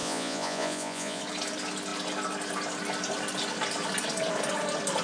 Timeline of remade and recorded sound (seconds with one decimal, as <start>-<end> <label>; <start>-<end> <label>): 0.0-1.2 remade; 1.2-5.0 recorded